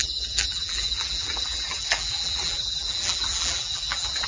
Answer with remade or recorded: remade